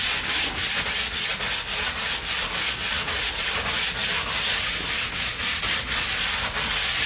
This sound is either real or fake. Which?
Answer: real